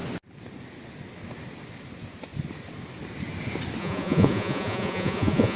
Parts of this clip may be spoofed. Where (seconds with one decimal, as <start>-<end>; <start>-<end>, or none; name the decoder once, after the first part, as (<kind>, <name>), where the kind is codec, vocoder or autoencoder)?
3.8-5.6 (vocoder, Vocos)